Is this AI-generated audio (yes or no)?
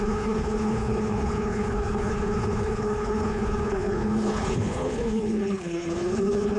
yes